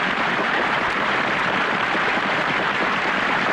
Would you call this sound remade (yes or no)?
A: yes